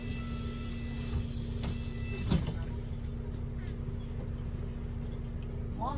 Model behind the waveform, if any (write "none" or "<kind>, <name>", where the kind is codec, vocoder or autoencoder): none